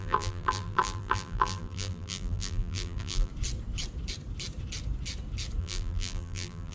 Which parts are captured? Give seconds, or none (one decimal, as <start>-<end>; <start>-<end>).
3.3-5.6